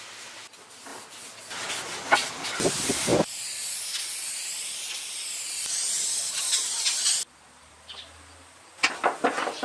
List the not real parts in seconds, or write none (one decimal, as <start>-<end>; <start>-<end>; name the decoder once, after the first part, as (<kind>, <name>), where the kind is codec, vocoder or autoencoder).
none